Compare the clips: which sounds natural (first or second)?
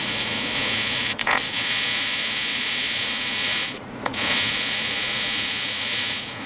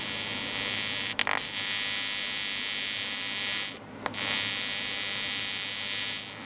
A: second